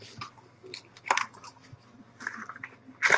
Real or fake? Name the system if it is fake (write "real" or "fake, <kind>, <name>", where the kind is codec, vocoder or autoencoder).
real